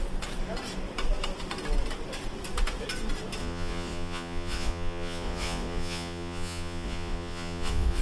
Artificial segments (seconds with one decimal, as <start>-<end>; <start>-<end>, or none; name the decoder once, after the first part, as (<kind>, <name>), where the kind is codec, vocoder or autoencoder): 3.4-8.0 (vocoder, Vocos)